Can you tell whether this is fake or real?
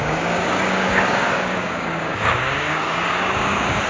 fake